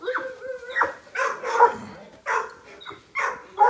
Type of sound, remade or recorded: recorded